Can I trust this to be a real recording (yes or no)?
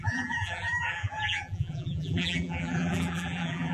no